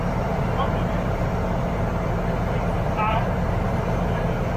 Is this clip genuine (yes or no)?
no